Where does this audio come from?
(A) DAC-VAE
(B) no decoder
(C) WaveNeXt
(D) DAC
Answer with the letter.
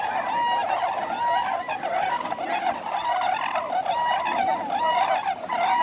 B